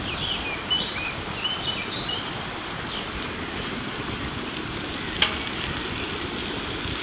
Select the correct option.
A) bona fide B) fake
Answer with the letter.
A